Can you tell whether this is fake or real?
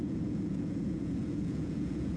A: fake